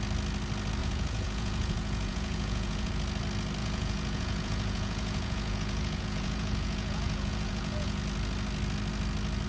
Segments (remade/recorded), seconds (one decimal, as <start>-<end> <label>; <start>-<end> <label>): 0.0-0.8 recorded; 0.8-2.9 remade; 2.9-3.6 recorded; 3.6-8.0 remade; 8.0-9.5 recorded